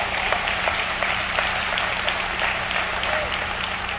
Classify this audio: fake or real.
fake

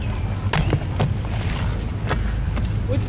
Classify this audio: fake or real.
real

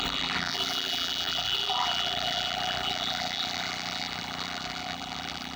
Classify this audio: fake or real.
fake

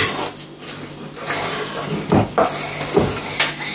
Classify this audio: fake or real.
real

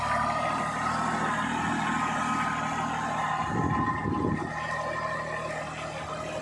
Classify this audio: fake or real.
real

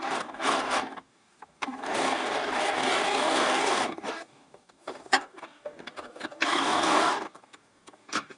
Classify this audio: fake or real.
fake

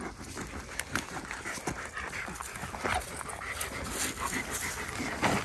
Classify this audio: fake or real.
real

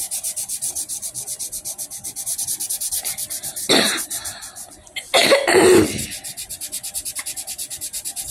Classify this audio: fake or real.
real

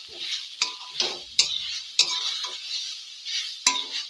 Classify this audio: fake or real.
real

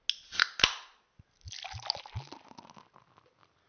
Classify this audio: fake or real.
real